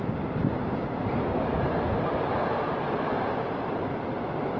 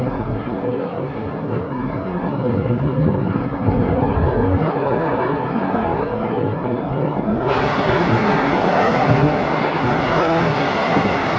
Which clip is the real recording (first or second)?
first